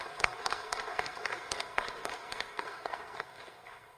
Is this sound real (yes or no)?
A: no